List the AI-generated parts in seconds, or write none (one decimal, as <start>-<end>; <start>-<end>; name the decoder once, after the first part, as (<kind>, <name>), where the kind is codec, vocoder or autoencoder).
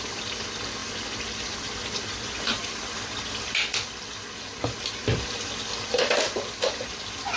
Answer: none